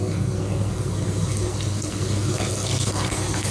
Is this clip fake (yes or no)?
yes